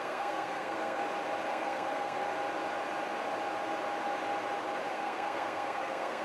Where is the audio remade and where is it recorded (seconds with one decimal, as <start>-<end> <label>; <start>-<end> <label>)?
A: 0.0-1.0 remade; 1.0-1.5 recorded; 1.5-2.2 remade; 2.2-4.9 recorded; 4.9-6.2 remade